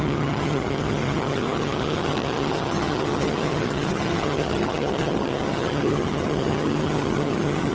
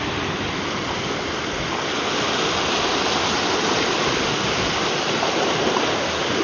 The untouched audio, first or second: second